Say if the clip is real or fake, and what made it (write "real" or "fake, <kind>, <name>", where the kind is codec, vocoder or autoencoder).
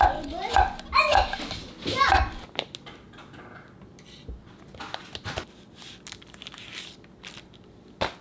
real